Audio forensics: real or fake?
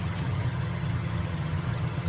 fake